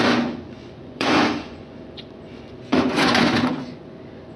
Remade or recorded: remade